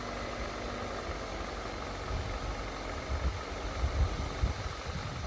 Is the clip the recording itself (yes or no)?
yes